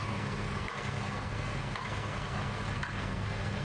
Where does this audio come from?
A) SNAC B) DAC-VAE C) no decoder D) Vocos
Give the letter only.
A